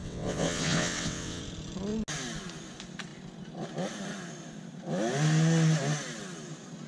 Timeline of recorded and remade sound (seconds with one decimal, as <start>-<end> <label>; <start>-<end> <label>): 0.0-1.4 remade; 1.4-6.9 recorded